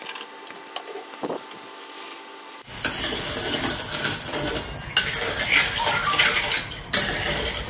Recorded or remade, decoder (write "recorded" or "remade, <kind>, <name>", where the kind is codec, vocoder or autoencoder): recorded